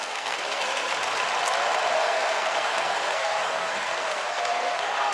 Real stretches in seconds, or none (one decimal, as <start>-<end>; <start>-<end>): 0.9-2.0